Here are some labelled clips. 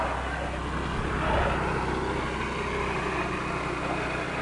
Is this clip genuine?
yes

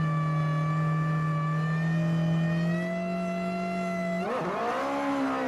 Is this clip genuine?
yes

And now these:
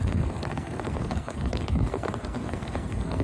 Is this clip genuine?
no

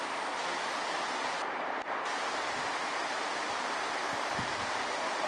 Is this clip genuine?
yes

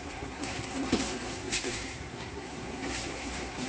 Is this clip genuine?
no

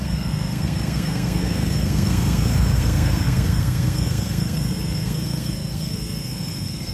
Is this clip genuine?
no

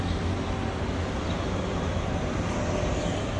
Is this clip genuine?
yes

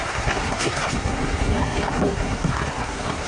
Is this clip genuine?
no